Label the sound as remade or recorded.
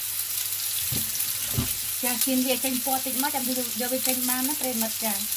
recorded